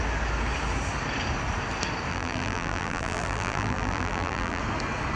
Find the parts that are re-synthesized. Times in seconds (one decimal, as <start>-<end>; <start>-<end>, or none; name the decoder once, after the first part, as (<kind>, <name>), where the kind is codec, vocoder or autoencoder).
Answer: 2.1-4.6 (vocoder, BigVGAN v2)